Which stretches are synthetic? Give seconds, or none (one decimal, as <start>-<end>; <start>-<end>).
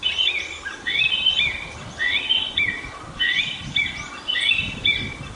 none